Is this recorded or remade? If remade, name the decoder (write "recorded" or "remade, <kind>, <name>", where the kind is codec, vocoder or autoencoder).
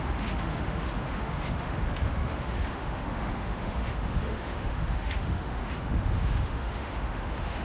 remade, autoencoder, DAC-VAE